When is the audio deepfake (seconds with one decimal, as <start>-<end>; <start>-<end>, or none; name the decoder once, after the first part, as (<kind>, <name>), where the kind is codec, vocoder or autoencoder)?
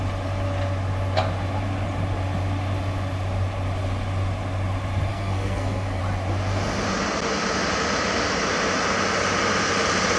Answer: 5.1-6.0 (codec, SNAC)